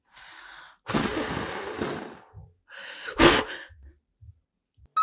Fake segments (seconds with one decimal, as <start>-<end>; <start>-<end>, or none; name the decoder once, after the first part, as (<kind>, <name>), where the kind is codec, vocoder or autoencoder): none